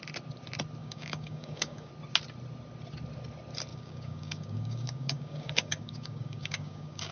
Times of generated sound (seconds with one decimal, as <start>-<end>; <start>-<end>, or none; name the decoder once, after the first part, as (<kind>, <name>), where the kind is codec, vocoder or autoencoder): 0.8-1.9 (codec, DAC); 3.7-7.1